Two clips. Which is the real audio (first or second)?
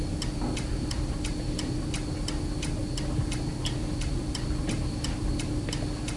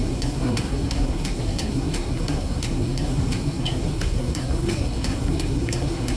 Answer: first